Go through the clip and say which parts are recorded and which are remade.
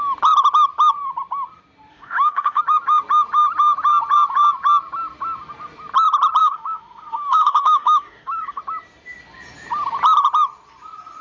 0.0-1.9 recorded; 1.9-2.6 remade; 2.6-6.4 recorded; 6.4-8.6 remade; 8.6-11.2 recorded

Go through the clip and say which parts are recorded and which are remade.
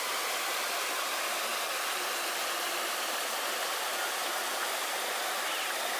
0.0-6.0 recorded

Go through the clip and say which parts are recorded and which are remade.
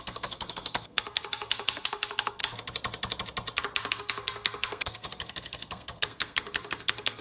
0.0-2.4 remade; 2.4-3.9 recorded; 3.9-7.2 remade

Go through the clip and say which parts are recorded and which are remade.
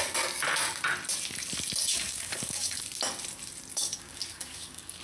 0.0-1.9 recorded; 1.9-2.8 remade; 2.8-3.7 recorded; 3.7-5.0 remade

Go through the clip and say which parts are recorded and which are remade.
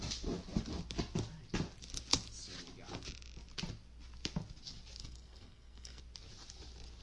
0.0-5.0 recorded; 5.0-6.0 remade; 6.0-7.0 recorded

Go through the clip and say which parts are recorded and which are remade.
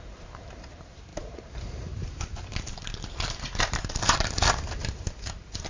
0.0-5.7 remade